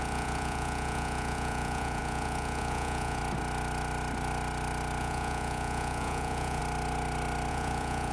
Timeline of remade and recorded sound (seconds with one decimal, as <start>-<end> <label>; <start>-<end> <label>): 0.0-3.2 remade; 3.2-5.0 recorded; 5.0-6.6 remade; 6.6-7.5 recorded; 7.5-8.1 remade